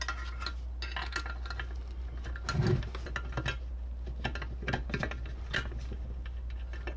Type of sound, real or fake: real